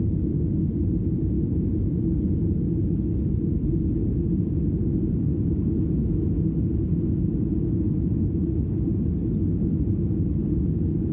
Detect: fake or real real